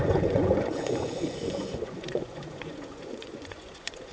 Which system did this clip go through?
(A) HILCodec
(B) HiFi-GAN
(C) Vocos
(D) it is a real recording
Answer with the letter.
C